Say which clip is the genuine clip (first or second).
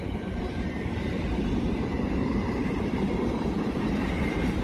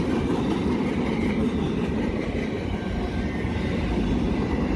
second